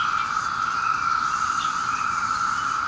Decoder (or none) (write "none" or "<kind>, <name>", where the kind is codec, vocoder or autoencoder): none